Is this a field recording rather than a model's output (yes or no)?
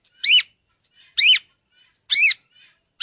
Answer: yes